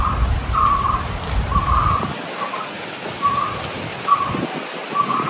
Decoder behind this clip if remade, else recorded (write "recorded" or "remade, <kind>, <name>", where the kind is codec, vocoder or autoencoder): recorded